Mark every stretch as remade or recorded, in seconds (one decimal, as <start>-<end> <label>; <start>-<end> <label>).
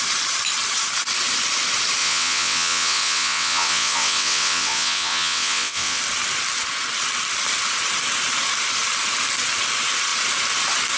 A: 0.0-2.0 recorded; 2.0-6.0 remade; 6.0-11.0 recorded